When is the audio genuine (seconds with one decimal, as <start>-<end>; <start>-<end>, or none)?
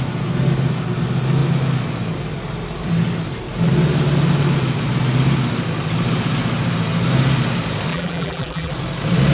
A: 0.0-7.9; 8.7-9.3